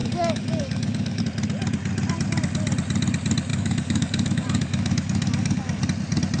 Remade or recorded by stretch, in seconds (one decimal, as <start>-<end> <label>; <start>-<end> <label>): 0.0-1.2 remade; 1.2-3.5 recorded; 3.5-5.8 remade; 5.8-6.4 recorded